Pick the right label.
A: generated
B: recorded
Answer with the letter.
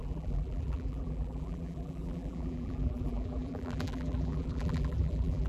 A